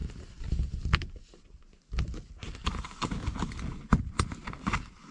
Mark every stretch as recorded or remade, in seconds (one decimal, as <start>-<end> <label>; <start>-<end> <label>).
0.0-5.1 recorded